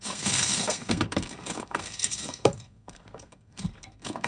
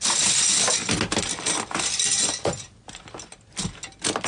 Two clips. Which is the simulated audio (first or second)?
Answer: first